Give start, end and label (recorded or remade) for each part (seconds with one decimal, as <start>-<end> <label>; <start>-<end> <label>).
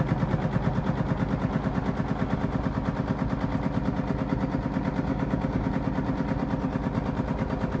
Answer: 0.0-5.1 recorded; 5.1-5.7 remade; 5.7-7.8 recorded